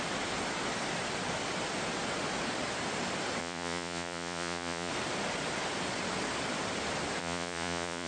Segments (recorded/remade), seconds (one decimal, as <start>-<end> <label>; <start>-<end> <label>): 0.0-3.4 recorded; 3.4-4.9 remade; 4.9-7.2 recorded; 7.2-8.1 remade